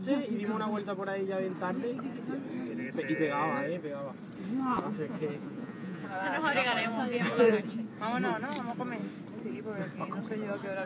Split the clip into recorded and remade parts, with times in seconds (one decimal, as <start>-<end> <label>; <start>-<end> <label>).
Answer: 0.0-4.7 recorded; 4.7-7.8 remade; 7.8-10.9 recorded